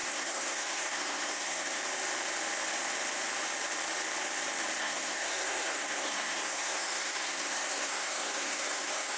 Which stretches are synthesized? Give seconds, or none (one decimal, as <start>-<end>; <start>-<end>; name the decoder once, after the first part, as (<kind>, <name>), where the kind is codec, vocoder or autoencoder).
0.0-1.8 (codec, SNAC); 4.8-9.2

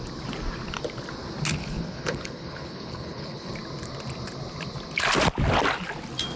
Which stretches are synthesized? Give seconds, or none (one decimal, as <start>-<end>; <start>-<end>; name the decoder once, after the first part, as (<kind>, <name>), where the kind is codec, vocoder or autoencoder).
1.6-3.5 (codec, HILCodec)

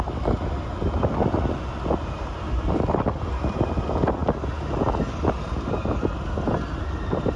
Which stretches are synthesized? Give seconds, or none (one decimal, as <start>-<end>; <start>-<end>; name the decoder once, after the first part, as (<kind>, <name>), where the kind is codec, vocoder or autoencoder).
none

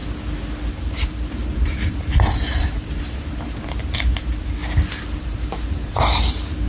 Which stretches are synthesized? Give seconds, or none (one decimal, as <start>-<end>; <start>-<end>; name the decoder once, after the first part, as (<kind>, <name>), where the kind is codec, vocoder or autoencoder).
0.7-4.6 (vocoder, BigVGAN v2); 5.2-6.7

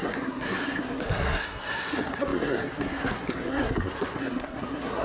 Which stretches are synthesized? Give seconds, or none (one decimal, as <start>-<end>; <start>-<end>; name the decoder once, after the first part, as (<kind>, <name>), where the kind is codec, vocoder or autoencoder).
0.0-5.0 (codec, SNAC)